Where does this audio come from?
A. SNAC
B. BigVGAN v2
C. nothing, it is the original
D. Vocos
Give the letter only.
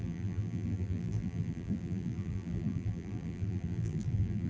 B